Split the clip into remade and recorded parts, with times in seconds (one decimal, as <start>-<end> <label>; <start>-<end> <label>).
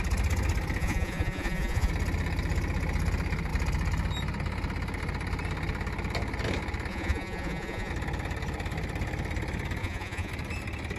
0.0-0.8 recorded; 0.8-1.9 remade; 1.9-6.9 recorded; 6.9-7.9 remade; 7.9-9.8 recorded; 9.8-10.3 remade; 10.3-11.0 recorded